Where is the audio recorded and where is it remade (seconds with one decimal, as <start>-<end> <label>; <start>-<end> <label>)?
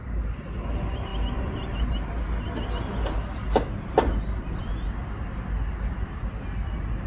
0.0-7.1 recorded